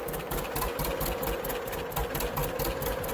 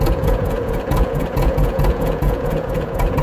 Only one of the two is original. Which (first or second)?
first